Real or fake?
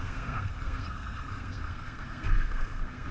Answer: fake